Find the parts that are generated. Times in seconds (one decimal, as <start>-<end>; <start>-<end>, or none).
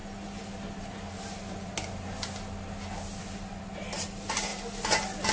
none